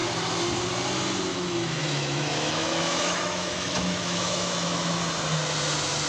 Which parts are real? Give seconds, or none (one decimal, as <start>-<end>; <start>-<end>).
0.0-1.3; 5.0-6.1